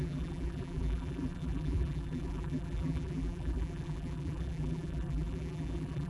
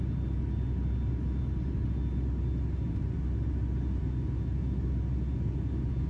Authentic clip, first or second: second